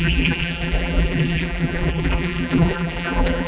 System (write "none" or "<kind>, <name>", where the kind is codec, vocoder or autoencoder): vocoder, BigVGAN v2